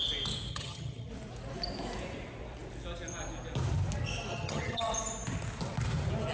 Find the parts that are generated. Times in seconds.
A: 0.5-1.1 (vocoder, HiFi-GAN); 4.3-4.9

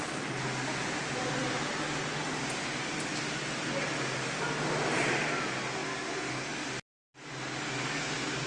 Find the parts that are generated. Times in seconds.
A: none

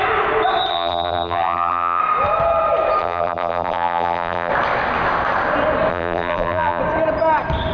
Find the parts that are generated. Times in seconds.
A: 0.7-2.0 (vocoder, BigVGAN v2); 3.0-4.5; 5.9-6.8

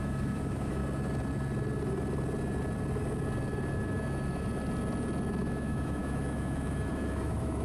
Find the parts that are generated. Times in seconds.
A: 0.0-0.8 (autoencoder, DAC-VAE); 5.4-7.6

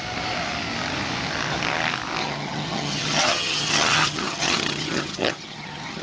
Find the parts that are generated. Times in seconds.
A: 2.2-6.0 (vocoder, HiFi-GAN)

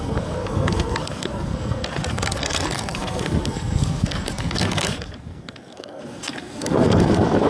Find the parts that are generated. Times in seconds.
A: 0.0-7.5 (codec, SNAC)

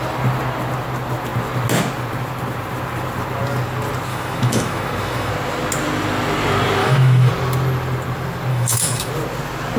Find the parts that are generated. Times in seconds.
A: 4.1-5.3 (autoencoder, DAC-VAE); 6.8-7.3; 8.5-9.1